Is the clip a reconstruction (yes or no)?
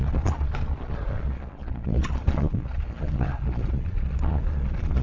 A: yes